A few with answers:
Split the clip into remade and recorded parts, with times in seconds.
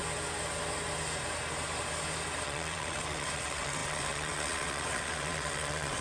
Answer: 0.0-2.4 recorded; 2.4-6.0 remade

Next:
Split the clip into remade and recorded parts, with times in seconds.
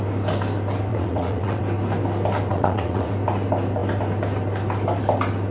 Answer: 0.0-0.9 recorded; 0.9-1.6 remade; 1.6-2.5 recorded; 2.5-3.1 remade; 3.1-5.5 recorded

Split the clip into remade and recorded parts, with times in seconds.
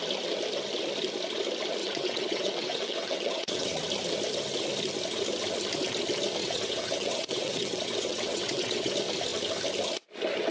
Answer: 0.0-1.8 recorded; 1.8-3.8 remade; 3.8-6.4 recorded; 6.4-8.9 remade; 8.9-10.5 recorded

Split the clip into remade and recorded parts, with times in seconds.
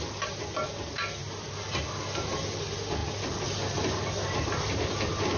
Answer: 0.0-5.4 recorded